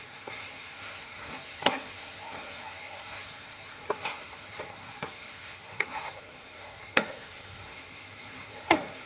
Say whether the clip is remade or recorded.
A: remade